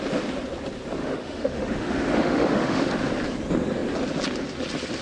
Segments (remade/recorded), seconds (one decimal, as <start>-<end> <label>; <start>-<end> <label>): 0.0-1.0 recorded; 1.0-2.9 remade; 2.9-5.0 recorded